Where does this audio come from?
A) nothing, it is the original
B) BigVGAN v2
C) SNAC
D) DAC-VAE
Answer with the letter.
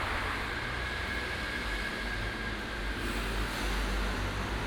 A